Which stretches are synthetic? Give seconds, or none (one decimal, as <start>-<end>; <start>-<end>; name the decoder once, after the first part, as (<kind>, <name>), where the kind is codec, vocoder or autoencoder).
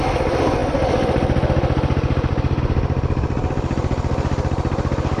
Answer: none